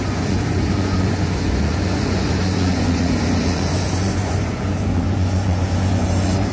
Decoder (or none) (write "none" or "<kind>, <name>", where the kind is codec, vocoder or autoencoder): vocoder, Vocos